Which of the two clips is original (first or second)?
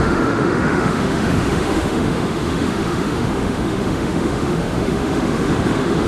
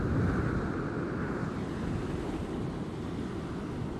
second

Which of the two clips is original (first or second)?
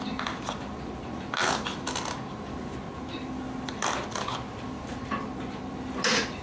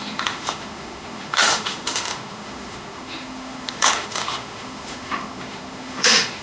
first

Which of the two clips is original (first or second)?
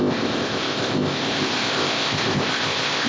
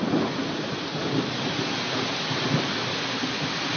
second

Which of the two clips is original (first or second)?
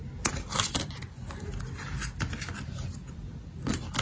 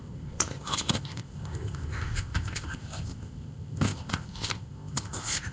first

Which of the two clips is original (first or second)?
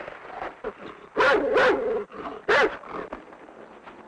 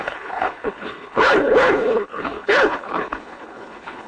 first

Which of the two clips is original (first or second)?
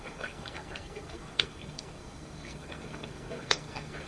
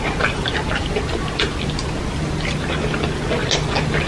second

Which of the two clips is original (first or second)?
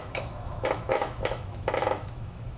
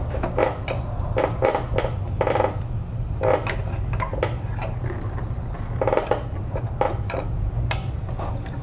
second